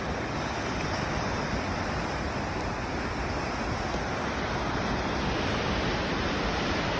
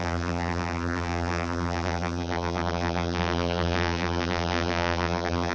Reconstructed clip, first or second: second